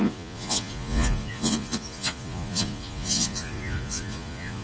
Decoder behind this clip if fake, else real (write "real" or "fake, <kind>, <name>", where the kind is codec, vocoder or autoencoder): fake, vocoder, Vocos